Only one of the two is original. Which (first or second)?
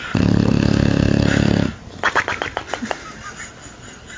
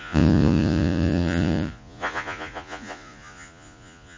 first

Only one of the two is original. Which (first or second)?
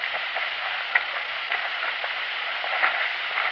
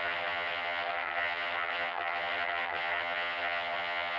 first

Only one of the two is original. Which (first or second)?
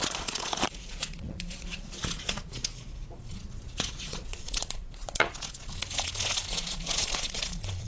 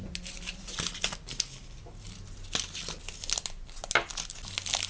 second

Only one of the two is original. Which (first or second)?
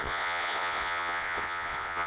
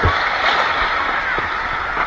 second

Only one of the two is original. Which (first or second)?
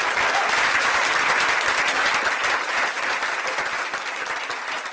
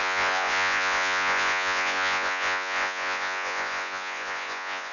first